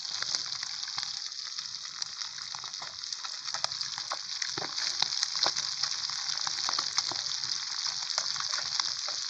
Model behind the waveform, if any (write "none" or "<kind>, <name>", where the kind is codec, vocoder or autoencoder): none